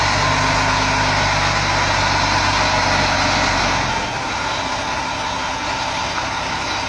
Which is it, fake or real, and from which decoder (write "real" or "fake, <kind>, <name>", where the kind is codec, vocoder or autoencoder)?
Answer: real